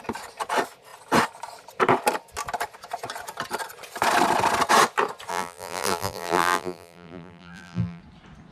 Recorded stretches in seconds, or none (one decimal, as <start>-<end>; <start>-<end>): 0.0-5.3; 8.0-8.5